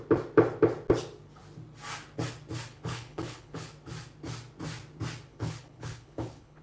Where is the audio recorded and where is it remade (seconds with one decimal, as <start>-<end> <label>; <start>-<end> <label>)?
0.0-2.7 recorded; 2.7-3.7 remade; 3.7-5.3 recorded; 5.3-6.6 remade